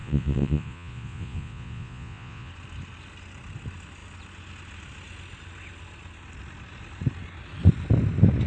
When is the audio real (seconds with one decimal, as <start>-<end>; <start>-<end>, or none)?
2.5-8.5